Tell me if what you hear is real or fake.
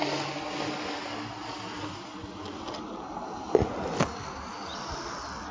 real